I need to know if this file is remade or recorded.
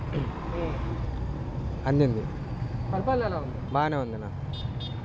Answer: recorded